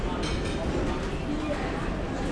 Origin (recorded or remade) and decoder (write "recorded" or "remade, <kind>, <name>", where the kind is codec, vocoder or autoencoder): recorded